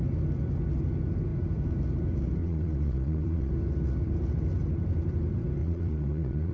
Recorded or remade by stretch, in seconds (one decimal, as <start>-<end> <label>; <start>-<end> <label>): 0.0-2.4 recorded; 2.4-3.5 remade; 3.5-5.6 recorded; 5.6-6.5 remade